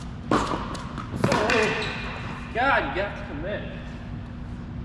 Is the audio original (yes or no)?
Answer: yes